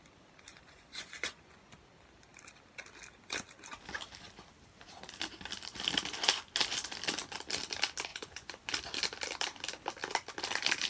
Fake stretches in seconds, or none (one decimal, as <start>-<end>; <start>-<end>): 0.5-1.7; 8.1-8.7